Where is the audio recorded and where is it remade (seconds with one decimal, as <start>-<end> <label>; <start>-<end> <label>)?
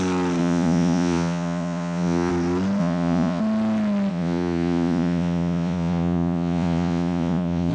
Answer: 0.0-0.4 recorded; 0.4-2.3 remade; 2.3-2.8 recorded; 2.8-3.4 remade; 3.4-4.1 recorded; 4.1-7.7 remade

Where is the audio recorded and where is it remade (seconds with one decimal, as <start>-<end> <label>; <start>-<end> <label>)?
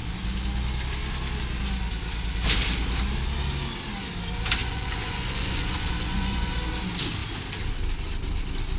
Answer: 0.0-4.6 recorded; 4.6-6.5 remade; 6.5-8.8 recorded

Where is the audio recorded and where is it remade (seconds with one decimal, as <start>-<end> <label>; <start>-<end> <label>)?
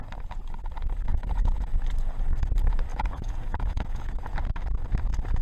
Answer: 0.0-1.1 recorded; 1.1-1.7 remade; 1.7-2.9 recorded; 2.9-4.1 remade; 4.1-5.4 recorded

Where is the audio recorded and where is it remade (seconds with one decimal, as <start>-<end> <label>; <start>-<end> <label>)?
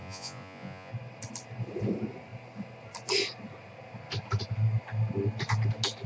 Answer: 0.0-0.9 remade; 0.9-6.1 recorded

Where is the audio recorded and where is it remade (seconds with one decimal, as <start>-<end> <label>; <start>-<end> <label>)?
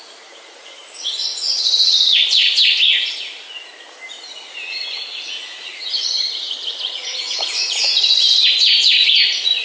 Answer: 0.0-0.8 remade; 0.8-1.5 recorded; 1.5-2.4 remade; 2.4-4.1 recorded; 4.1-7.9 remade; 7.9-8.5 recorded; 8.5-9.6 remade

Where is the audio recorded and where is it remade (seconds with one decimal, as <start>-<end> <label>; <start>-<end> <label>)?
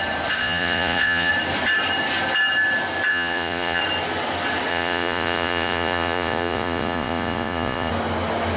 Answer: 0.0-0.4 recorded; 0.4-1.3 remade; 1.3-3.1 recorded; 3.1-3.8 remade; 3.8-4.7 recorded; 4.7-7.9 remade; 7.9-8.6 recorded